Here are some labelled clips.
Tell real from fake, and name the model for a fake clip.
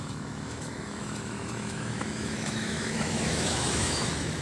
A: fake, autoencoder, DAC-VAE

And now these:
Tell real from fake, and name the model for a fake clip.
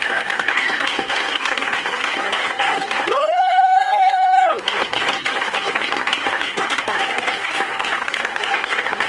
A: fake, codec, SNAC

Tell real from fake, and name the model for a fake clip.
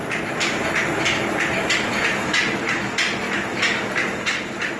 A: real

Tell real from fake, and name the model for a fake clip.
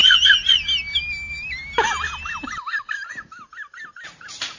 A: real